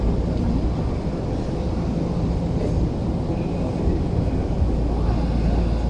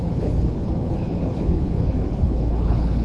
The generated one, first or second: second